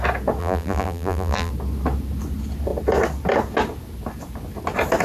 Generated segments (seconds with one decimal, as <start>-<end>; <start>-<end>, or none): 0.4-1.5